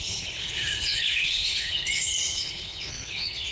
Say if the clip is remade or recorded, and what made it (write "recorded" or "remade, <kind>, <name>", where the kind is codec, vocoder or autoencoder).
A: remade, codec, HILCodec